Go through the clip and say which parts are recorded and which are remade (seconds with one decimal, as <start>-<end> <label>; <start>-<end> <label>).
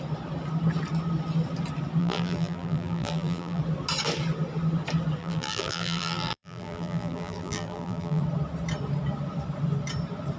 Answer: 0.0-2.0 recorded; 2.0-3.6 remade; 3.6-5.2 recorded; 5.2-8.2 remade; 8.2-10.4 recorded